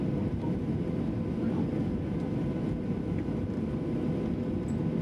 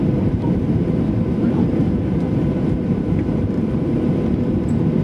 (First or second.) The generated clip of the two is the second